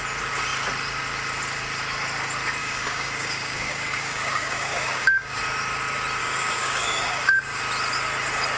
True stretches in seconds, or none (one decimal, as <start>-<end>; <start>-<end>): 0.0-2.6; 5.4-6.2; 7.6-8.6